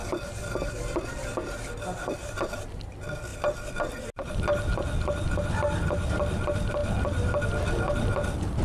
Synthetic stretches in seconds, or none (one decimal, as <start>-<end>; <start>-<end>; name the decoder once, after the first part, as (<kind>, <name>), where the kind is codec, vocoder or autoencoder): none